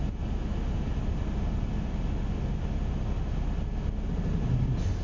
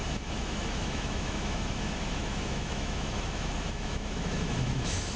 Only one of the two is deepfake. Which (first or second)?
second